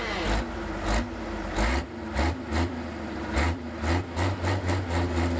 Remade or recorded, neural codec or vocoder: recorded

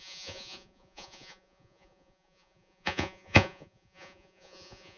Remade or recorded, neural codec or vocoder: remade, vocoder, Vocos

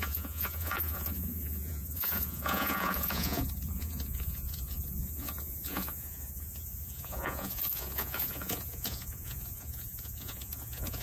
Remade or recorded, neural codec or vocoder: remade, vocoder, Vocos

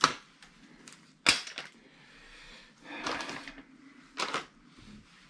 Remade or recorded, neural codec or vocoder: recorded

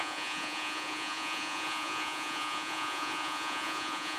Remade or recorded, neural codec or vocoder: remade, vocoder, Vocos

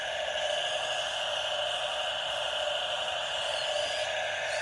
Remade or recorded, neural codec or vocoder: recorded